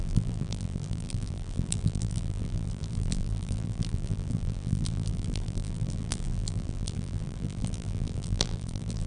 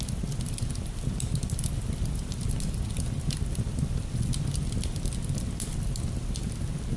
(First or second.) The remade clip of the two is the first